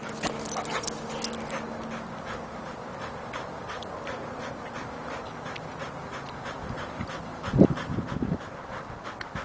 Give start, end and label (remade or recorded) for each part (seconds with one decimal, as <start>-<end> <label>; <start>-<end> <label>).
0.0-9.4 recorded